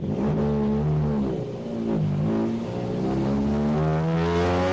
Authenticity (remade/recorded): recorded